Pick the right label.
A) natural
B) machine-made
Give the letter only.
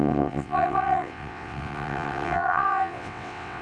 B